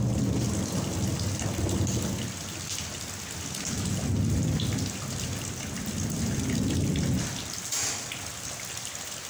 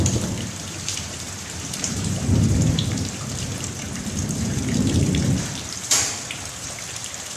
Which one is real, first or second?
first